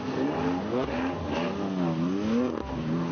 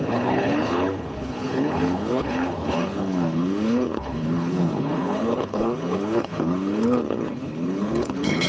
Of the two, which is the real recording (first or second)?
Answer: first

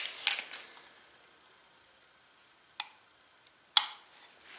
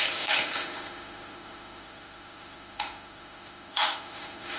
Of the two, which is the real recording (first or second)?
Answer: first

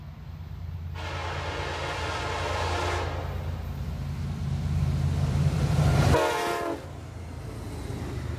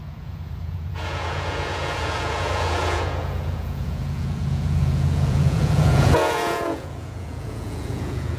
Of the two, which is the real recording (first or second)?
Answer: first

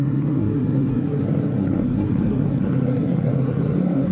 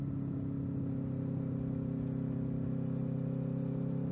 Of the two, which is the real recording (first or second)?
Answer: second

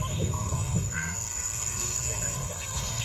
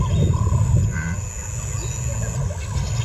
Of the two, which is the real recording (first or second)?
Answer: second